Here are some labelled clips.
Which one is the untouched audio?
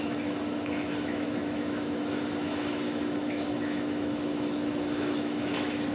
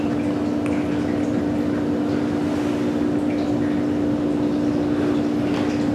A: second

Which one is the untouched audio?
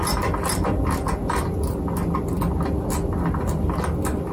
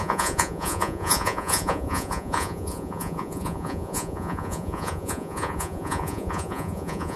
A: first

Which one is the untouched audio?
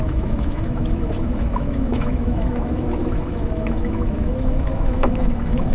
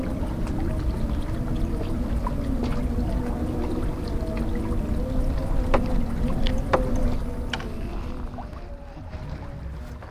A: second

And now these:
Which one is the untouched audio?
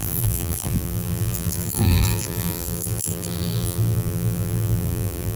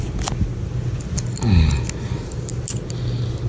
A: second